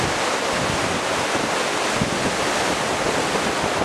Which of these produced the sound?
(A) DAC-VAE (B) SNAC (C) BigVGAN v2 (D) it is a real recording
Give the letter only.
D